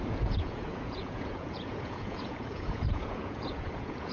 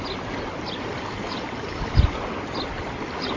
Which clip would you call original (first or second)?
second